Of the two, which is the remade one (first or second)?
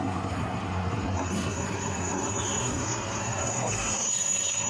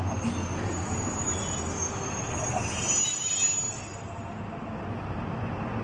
first